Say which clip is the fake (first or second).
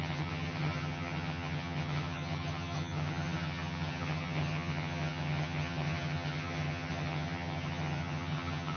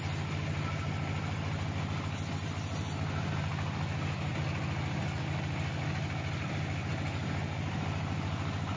first